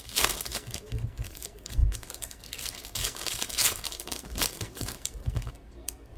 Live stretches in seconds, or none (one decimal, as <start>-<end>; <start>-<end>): none